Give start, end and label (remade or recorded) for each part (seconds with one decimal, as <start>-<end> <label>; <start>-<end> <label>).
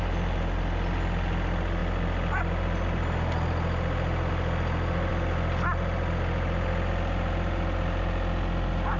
0.0-9.0 recorded